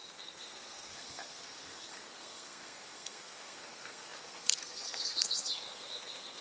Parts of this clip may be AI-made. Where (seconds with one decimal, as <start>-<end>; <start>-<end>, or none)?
0.0-6.4